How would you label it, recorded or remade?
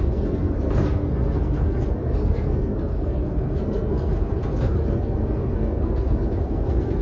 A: remade